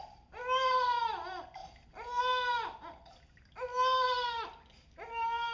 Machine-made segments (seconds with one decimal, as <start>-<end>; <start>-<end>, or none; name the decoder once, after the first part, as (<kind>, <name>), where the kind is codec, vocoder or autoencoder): none